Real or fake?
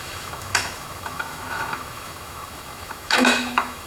fake